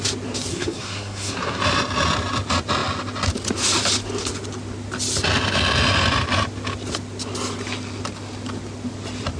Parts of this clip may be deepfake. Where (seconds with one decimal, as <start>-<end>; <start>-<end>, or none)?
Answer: 0.5-1.6